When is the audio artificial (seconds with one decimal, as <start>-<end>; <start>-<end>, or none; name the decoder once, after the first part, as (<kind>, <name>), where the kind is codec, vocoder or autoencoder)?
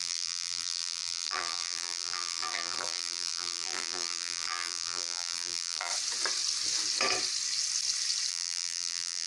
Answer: 0.0-5.9 (vocoder, BigVGAN v2); 8.3-9.3